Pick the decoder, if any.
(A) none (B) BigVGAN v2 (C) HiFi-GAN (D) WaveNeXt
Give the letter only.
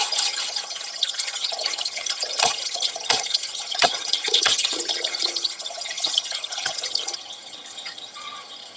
C